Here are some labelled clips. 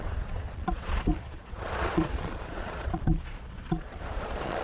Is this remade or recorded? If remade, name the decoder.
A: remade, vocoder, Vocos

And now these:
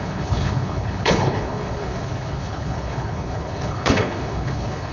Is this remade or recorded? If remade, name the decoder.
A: remade, codec, HILCodec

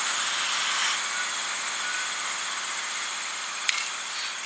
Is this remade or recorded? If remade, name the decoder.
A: recorded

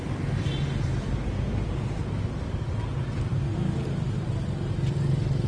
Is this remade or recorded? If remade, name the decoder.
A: recorded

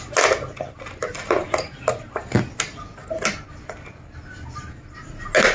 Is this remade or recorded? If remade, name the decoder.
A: recorded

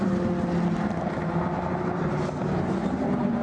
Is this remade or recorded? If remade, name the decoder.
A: recorded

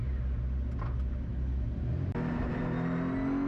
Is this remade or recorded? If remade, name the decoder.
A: recorded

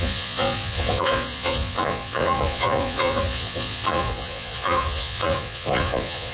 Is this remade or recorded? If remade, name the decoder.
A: remade, vocoder, Vocos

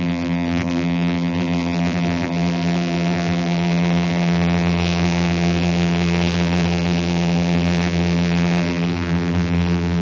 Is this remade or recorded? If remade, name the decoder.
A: remade, vocoder, BigVGAN v2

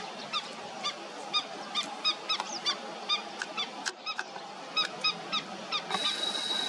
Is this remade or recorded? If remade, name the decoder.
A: recorded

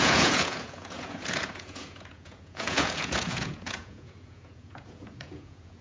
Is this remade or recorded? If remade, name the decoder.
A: remade, vocoder, Vocos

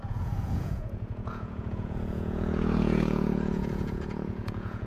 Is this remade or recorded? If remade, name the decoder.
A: remade, vocoder, Vocos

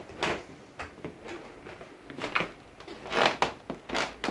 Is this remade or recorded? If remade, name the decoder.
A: recorded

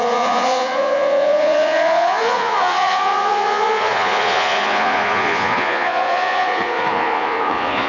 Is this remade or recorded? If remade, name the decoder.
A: remade, vocoder, Vocos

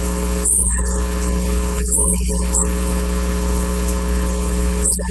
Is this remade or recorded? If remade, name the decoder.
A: remade, codec, HILCodec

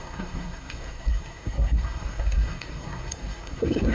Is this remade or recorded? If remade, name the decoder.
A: remade, codec, SNAC